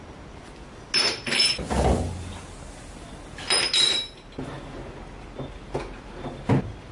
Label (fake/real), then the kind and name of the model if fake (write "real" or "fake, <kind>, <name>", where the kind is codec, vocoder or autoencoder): real